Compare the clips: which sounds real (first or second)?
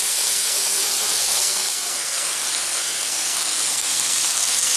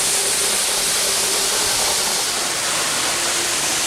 second